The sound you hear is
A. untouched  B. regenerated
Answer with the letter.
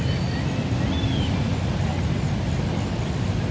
A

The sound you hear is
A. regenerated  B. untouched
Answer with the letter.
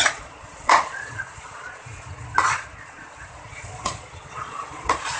A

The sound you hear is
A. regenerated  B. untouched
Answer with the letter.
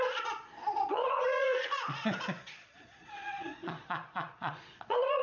A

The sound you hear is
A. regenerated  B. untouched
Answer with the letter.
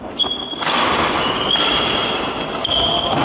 B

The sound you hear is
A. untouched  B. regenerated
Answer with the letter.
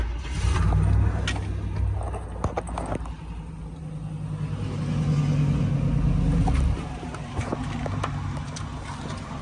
A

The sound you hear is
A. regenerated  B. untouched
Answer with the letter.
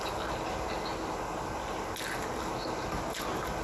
B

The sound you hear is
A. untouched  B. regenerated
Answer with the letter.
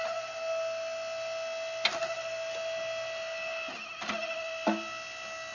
A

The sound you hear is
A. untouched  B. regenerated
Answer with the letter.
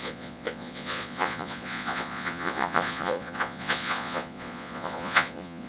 B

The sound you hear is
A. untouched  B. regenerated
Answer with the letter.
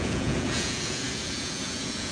B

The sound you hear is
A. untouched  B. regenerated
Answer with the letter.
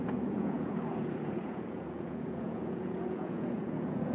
B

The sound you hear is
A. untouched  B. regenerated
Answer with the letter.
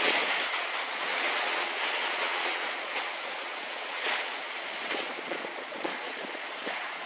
B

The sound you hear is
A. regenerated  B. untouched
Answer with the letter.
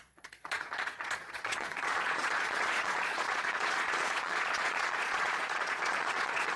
A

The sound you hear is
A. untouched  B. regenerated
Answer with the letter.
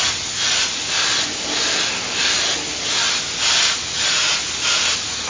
A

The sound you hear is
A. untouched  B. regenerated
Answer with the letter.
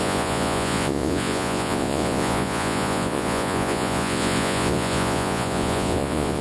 B